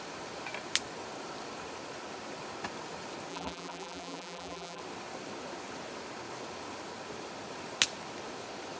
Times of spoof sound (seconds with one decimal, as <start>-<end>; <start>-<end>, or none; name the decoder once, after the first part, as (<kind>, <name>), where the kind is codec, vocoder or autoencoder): 3.3-4.8 (vocoder, BigVGAN v2)